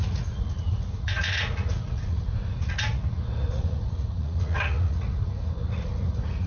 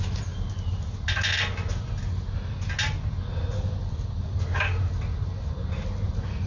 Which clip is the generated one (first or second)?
first